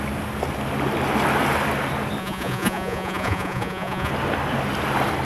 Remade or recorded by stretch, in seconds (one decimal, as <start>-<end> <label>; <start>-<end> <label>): 0.0-2.2 recorded; 2.2-4.1 remade; 4.1-5.2 recorded